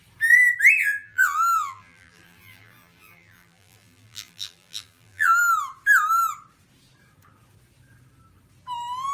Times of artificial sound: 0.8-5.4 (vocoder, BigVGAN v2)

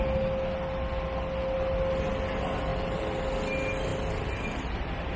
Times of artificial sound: 2.7-3.2 (vocoder, BigVGAN v2)

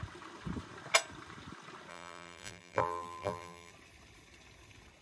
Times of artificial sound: 1.9-3.7 (vocoder, BigVGAN v2)

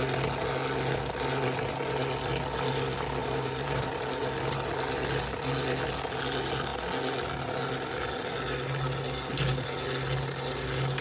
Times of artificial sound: 3.2-3.9 (vocoder, BigVGAN v2)